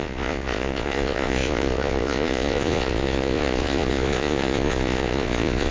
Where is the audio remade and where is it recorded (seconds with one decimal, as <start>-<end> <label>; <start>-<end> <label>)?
0.0-5.7 remade